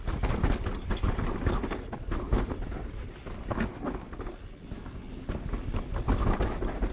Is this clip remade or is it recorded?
recorded